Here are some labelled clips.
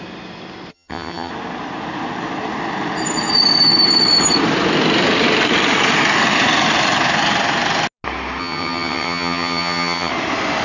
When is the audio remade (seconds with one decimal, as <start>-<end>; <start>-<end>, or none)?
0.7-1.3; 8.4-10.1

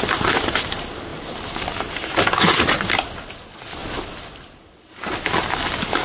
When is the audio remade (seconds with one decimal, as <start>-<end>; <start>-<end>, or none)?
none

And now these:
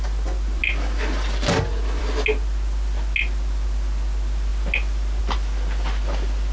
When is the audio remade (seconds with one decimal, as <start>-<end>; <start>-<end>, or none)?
none

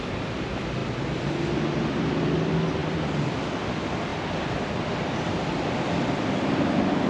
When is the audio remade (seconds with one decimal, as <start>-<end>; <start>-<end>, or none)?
2.8-3.4; 4.1-5.2

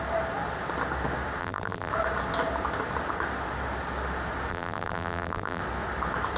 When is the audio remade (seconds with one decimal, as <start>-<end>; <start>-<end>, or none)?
1.4-1.9; 4.5-5.6

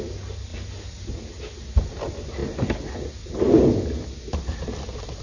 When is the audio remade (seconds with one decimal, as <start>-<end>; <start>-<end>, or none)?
none